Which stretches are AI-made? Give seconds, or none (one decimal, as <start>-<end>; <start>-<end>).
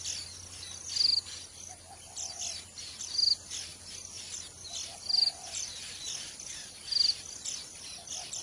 none